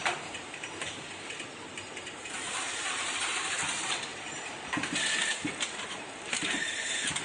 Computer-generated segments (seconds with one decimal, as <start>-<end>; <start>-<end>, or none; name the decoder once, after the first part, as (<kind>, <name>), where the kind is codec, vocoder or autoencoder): 0.0-3.6 (vocoder, BigVGAN v2); 4.1-7.2